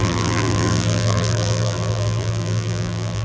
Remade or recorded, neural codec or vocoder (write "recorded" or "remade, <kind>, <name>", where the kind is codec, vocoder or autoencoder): remade, vocoder, BigVGAN v2